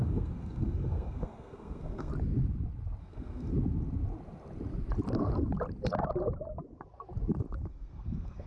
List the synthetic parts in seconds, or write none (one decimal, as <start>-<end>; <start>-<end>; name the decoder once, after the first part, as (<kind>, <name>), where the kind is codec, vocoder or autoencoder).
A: 0.0-2.1 (codec, SNAC); 3.0-3.5; 7.7-8.5